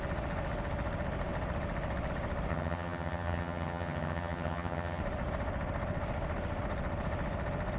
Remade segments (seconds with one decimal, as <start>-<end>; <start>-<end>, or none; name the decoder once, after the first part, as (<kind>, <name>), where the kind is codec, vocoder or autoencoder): 2.5-5.0 (vocoder, HiFi-GAN)